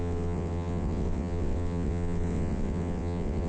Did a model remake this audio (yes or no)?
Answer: yes